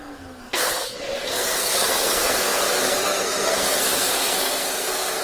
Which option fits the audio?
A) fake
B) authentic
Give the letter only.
A